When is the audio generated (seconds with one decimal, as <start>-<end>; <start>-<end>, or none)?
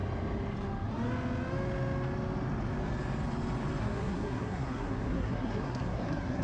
3.8-6.4